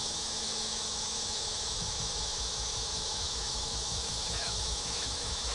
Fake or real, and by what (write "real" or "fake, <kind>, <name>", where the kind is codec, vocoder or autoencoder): fake, autoencoder, DAC-VAE